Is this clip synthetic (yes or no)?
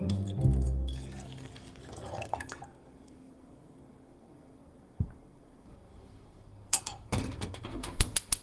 yes